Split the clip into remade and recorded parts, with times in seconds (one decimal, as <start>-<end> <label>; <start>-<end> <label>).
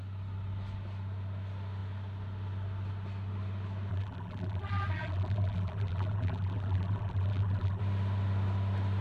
0.0-3.9 recorded; 3.9-7.8 remade; 7.8-9.0 recorded